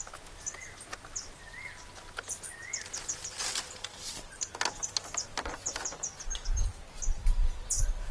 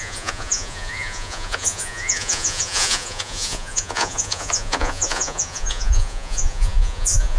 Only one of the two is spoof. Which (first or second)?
second